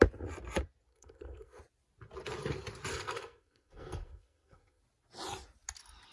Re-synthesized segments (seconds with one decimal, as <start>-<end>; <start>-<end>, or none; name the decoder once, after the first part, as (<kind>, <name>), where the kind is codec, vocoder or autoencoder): 0.9-1.6 (codec, SNAC); 2.9-4.8